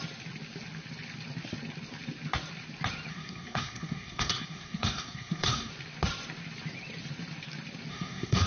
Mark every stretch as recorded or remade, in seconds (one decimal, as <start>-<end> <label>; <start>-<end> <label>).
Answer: 0.0-3.1 recorded; 3.1-5.7 remade; 5.7-7.9 recorded; 7.9-8.5 remade